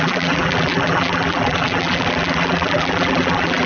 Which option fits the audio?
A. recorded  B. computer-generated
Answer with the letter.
B